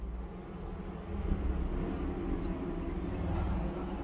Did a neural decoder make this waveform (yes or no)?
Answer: no